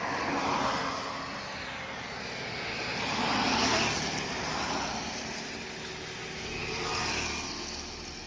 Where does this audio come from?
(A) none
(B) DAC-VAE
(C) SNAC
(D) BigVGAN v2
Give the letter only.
A